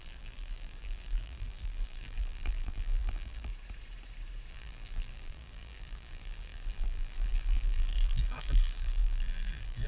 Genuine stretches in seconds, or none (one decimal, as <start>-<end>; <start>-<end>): 3.5-4.5